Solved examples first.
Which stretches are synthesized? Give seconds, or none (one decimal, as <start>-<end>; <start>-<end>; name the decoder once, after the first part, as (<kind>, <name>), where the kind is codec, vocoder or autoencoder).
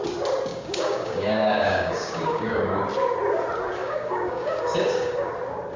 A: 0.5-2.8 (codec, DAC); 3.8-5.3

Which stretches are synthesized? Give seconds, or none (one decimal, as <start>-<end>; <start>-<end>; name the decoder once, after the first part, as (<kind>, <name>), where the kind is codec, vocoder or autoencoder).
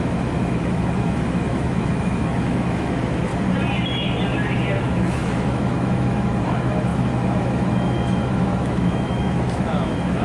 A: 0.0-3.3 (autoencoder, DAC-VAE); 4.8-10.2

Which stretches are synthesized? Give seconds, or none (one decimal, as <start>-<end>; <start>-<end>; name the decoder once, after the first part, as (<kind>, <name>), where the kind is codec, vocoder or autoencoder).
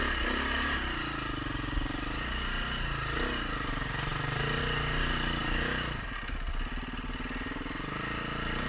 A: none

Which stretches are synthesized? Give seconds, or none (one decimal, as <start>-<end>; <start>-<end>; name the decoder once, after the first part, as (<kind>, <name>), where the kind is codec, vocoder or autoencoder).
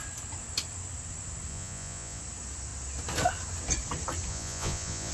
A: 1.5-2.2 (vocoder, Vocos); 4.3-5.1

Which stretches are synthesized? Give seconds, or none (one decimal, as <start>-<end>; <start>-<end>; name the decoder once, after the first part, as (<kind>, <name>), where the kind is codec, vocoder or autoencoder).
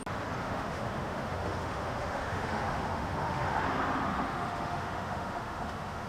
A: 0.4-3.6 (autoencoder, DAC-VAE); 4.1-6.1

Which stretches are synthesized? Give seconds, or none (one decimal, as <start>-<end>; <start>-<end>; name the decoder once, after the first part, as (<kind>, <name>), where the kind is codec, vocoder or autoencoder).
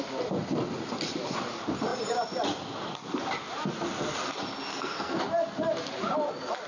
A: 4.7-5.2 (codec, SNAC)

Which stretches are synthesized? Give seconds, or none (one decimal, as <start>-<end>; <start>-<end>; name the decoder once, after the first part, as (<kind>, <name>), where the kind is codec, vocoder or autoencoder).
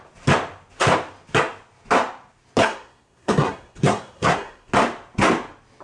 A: 2.6-4.7 (codec, SNAC)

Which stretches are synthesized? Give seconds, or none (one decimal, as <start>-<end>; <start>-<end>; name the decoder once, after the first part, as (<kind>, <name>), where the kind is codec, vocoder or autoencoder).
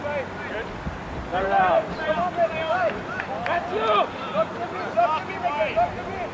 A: 1.3-3.3 (vocoder, BigVGAN v2); 4.3-5.4